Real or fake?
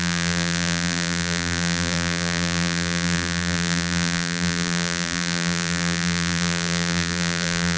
fake